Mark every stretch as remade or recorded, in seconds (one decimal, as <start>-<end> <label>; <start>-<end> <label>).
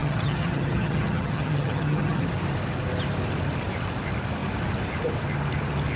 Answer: 0.0-2.2 remade; 2.2-6.0 recorded